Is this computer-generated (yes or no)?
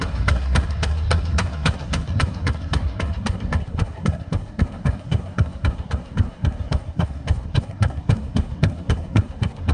yes